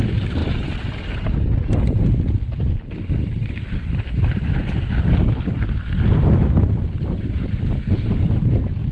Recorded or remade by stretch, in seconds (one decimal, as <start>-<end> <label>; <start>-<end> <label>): 0.0-8.9 recorded